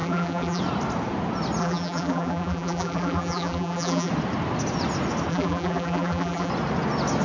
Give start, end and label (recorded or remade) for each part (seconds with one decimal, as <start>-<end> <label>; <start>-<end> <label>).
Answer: 0.0-0.6 remade; 0.6-1.6 recorded; 1.6-4.1 remade; 4.1-5.3 recorded; 5.3-6.5 remade; 6.5-7.2 recorded